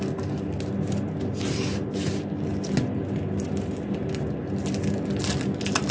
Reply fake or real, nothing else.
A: real